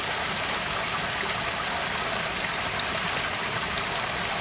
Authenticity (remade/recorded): recorded